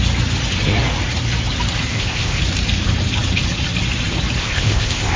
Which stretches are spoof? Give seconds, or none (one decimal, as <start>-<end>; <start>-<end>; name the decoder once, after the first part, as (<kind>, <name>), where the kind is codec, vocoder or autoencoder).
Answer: 1.9-2.4 (codec, ZipCodec); 4.4-5.2